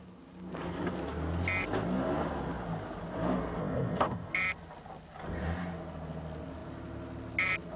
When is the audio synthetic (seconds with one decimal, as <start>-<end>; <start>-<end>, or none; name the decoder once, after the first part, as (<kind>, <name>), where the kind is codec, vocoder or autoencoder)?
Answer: 3.6-4.3 (codec, ZipCodec)